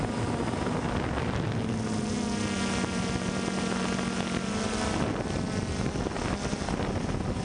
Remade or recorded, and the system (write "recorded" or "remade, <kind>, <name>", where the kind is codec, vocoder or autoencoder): recorded